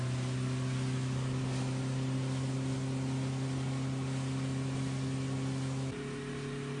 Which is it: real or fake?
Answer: real